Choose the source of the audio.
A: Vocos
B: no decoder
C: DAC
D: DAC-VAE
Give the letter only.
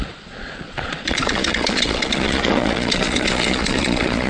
A